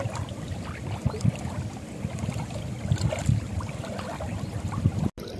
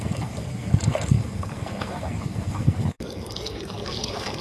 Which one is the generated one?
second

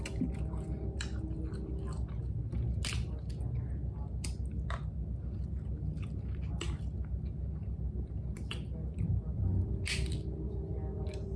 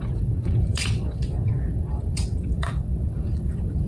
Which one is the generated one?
second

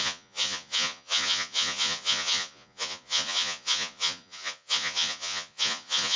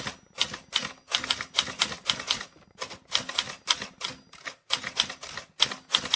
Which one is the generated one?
first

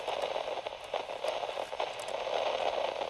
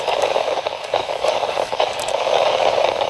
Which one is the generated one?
second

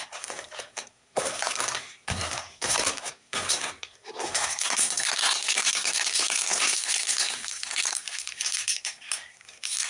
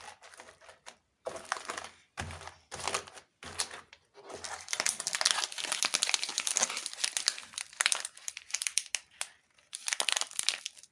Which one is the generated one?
first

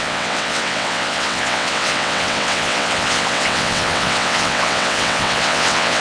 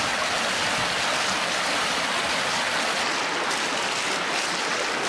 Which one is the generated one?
first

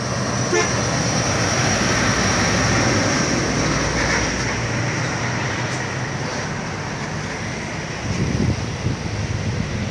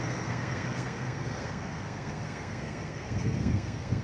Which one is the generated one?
second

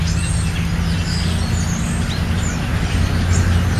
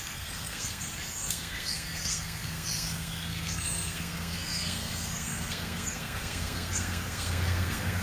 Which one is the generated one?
second